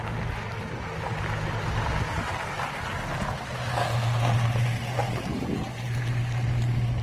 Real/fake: real